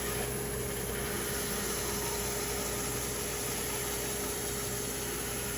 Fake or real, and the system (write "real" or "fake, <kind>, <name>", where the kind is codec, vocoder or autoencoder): real